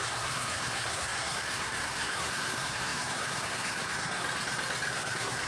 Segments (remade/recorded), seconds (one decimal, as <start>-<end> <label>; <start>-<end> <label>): 0.0-4.2 remade; 4.2-4.9 recorded; 4.9-5.5 remade